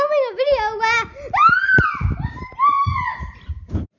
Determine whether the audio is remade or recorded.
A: recorded